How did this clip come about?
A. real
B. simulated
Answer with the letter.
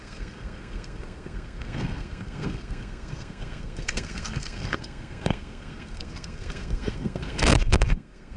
B